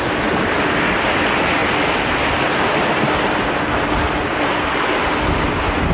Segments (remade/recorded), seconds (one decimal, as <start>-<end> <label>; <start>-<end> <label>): 0.0-5.9 recorded